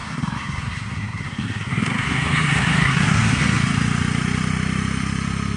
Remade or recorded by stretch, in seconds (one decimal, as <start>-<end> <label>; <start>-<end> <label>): 0.0-3.4 remade; 3.4-5.6 recorded